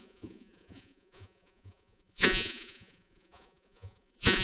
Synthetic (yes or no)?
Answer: yes